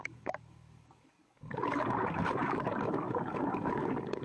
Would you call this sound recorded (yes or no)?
no